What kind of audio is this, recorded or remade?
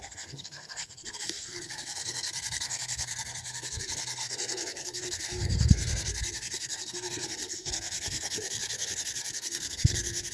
remade